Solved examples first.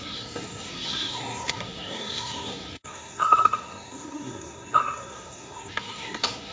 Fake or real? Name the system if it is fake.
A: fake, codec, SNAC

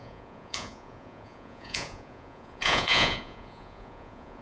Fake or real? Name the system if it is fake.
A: fake, vocoder, Vocos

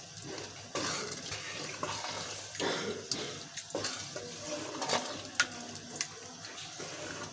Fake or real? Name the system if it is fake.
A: real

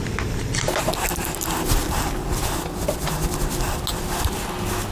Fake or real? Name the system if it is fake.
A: real